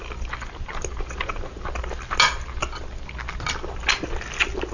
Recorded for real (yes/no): yes